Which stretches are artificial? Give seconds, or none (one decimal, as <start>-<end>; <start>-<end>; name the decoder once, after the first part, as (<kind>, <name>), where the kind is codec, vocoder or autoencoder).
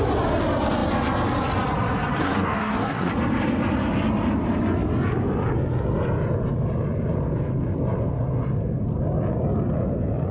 2.2-3.1 (codec, SNAC)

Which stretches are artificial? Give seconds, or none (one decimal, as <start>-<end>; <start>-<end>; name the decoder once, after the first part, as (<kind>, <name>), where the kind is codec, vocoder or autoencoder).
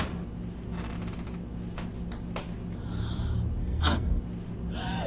3.6-4.2 (codec, SNAC)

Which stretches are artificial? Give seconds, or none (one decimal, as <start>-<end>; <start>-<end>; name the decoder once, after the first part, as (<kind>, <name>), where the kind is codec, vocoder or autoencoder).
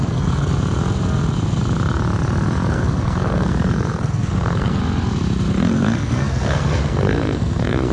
0.0-0.5 (codec, SNAC); 2.7-4.8; 5.6-7.9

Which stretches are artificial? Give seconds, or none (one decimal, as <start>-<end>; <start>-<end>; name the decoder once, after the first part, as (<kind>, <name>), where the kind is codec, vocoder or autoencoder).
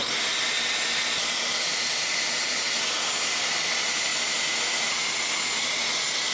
none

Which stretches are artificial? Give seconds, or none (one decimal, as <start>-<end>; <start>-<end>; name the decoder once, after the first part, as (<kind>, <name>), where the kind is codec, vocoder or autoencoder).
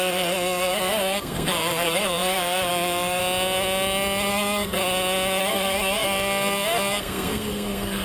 0.0-3.2 (codec, SNAC); 4.3-4.8; 5.4-8.0